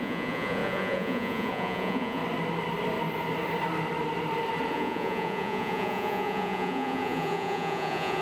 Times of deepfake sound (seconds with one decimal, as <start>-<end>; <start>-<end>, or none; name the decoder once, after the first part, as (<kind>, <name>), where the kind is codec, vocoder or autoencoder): 0.0-2.2 (vocoder, Vocos); 4.7-8.2